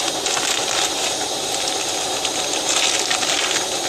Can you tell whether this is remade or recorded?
recorded